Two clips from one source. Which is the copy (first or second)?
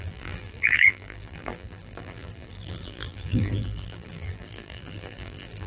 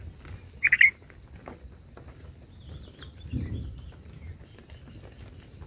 first